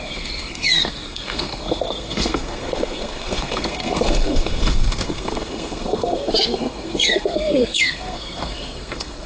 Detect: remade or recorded remade